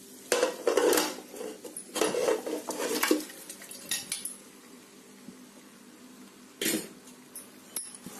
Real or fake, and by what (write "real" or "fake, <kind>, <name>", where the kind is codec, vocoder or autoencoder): real